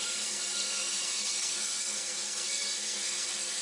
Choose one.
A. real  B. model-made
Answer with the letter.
B